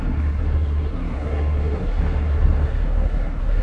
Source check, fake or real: fake